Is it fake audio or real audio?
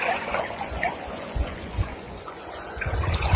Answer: fake